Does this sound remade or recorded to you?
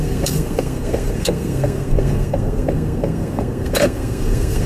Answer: remade